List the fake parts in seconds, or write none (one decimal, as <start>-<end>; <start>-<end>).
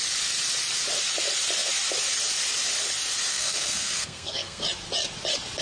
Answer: 3.3-4.6